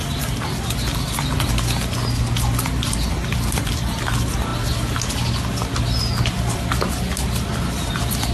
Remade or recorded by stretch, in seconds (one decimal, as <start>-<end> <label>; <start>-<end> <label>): 0.0-8.3 recorded